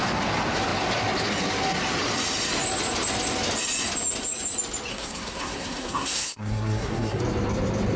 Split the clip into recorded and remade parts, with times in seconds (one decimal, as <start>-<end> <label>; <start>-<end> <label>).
0.0-4.9 recorded; 4.9-7.2 remade; 7.2-8.0 recorded